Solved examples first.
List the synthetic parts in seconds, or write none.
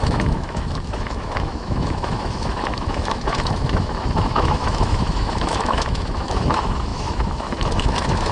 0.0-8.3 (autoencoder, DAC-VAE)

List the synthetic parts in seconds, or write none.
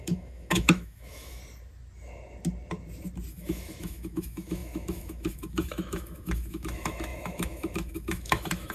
0.0-1.4 (autoencoder, DAC-VAE); 3.3-8.7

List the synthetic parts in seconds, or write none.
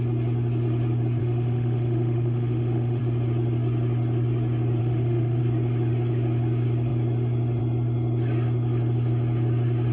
1.2-3.0 (autoencoder, DAC-VAE); 4.8-5.4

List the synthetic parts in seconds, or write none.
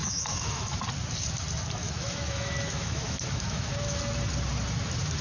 0.0-0.8 (autoencoder, DAC-VAE); 1.8-4.0